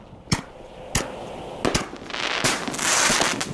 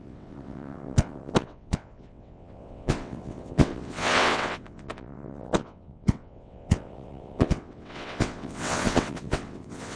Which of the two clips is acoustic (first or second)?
first